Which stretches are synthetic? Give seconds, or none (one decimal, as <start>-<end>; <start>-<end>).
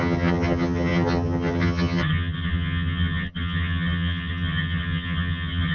0.0-5.7